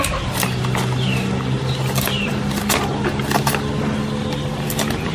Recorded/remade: recorded